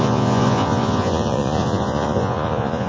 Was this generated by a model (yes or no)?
yes